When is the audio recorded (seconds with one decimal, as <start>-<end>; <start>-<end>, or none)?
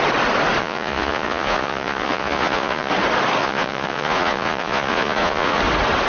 0.0-0.6; 2.9-3.4; 5.6-6.1